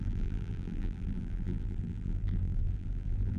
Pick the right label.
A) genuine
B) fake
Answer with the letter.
B